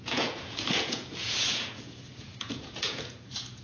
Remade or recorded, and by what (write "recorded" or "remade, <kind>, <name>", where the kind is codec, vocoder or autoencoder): remade, vocoder, Vocos